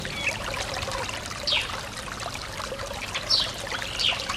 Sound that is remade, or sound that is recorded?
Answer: recorded